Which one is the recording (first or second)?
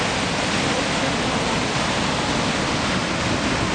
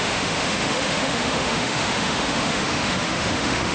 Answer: first